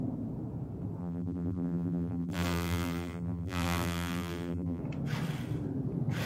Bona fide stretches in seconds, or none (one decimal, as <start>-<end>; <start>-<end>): 0.0-1.0; 4.8-6.3